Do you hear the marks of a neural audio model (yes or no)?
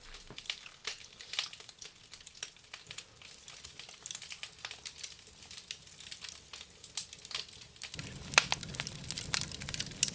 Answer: no